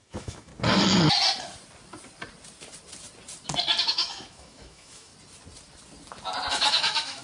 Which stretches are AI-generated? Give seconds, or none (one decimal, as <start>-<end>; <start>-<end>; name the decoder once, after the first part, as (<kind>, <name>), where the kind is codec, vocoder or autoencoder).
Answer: 0.0-0.5 (autoencoder, DAC-VAE); 3.8-5.1; 6.5-7.2